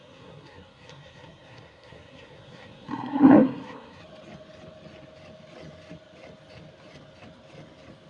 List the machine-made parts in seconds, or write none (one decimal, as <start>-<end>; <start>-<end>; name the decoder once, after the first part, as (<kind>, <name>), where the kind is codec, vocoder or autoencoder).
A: 0.0-4.0 (codec, SNAC)